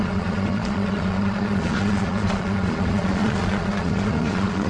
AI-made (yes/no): yes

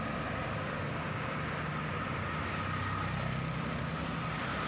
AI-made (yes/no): no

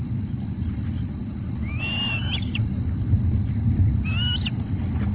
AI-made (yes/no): no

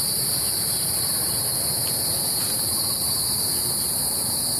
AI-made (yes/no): yes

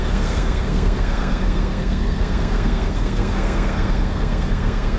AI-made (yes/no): yes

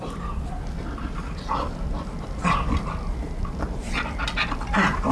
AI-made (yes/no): no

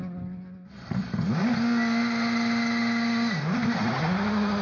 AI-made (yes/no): no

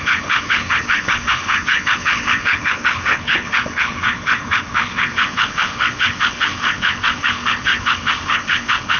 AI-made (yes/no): yes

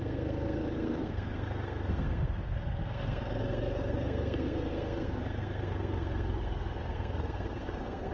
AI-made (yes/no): yes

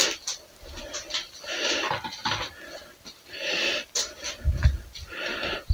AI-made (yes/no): no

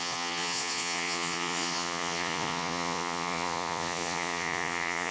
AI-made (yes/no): yes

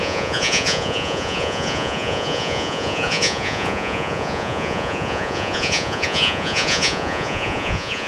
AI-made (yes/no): yes